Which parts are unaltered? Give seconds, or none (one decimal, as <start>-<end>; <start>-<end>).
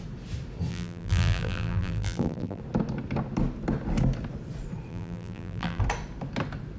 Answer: 0.0-0.7; 2.6-4.9; 5.8-6.8